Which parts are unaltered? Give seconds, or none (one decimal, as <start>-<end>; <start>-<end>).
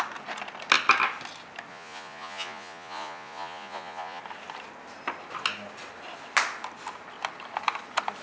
0.0-1.7; 4.2-8.2